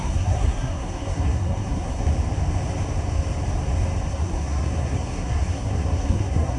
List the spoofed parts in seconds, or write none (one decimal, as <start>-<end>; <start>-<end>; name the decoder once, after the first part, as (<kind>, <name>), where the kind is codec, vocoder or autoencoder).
0.0-2.1 (codec, SNAC); 4.1-6.6

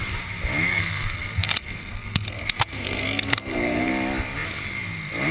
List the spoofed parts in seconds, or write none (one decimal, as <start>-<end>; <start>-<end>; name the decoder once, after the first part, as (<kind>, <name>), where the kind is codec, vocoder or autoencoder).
0.7-3.9 (codec, SNAC)

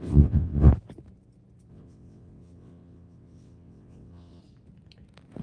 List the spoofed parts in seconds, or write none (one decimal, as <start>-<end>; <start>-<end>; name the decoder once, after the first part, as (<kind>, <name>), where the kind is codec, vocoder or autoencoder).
0.0-0.7 (vocoder, WaveNeXt); 1.7-4.4